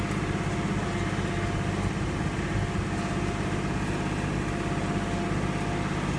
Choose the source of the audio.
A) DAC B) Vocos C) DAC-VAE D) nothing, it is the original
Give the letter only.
D